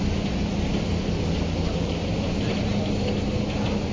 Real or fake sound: real